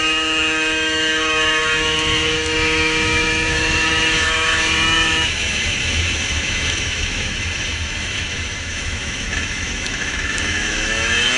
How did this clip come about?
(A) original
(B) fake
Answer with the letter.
B